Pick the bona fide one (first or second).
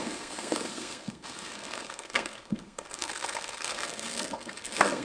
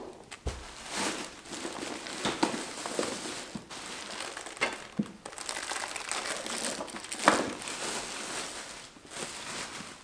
second